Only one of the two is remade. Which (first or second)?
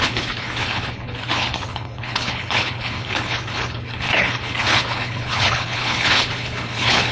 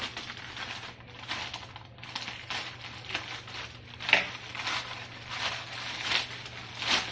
first